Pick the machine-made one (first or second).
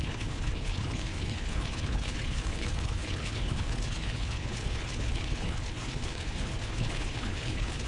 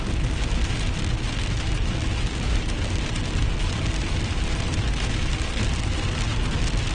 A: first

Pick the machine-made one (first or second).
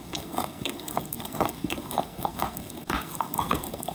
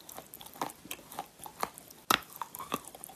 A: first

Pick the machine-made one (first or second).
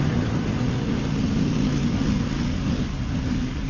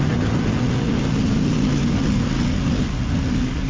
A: first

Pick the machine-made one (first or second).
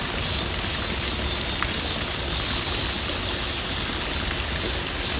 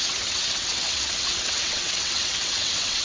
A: second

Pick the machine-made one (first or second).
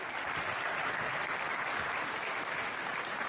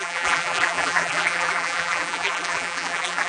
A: second